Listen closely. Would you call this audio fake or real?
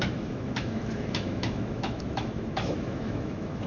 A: fake